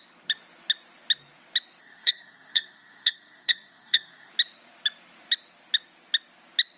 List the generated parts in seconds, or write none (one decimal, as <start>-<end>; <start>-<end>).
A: 1.8-4.3

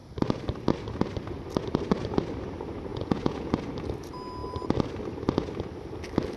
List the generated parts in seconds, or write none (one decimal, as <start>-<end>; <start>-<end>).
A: 2.9-3.5